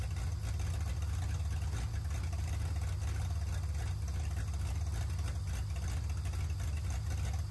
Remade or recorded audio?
recorded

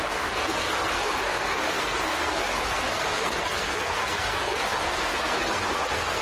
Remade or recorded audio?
remade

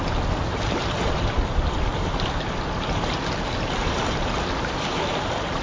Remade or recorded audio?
recorded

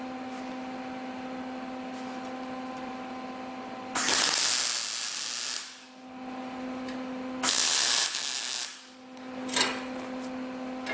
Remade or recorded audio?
recorded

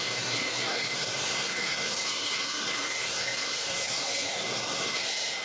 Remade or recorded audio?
remade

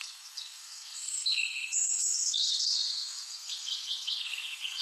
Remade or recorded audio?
remade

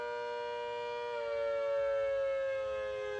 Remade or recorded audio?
recorded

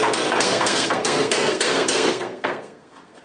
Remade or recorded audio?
remade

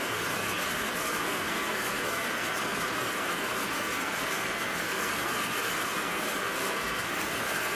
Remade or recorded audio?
remade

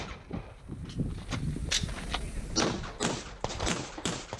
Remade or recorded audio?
recorded